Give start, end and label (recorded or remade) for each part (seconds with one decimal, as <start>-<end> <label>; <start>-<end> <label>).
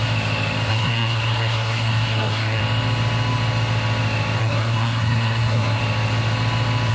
0.0-0.7 recorded; 0.7-2.6 remade; 2.6-4.4 recorded; 4.4-5.8 remade; 5.8-6.9 recorded